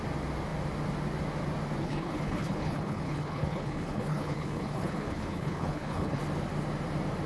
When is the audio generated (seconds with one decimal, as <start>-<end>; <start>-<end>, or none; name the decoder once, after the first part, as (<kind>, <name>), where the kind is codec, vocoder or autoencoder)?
1.8-6.2 (codec, HILCodec)